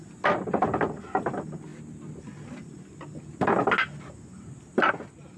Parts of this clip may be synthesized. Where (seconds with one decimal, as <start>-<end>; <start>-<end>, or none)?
none